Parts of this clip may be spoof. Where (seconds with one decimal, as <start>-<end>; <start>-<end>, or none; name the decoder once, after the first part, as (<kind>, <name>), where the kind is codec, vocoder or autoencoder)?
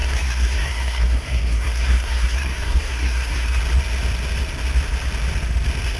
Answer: 0.0-3.6 (codec, SNAC)